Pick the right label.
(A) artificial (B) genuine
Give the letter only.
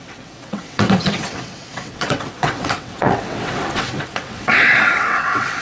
A